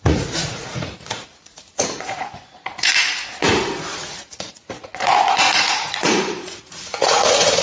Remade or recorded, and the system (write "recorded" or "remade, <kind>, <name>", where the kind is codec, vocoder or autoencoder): remade, vocoder, Vocos